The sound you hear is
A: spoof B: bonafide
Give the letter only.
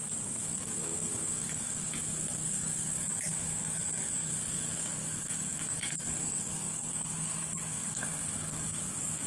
A